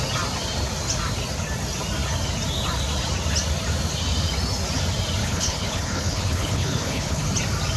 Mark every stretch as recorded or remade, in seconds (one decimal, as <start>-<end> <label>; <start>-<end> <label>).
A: 0.0-5.2 recorded; 5.2-7.2 remade; 7.2-7.8 recorded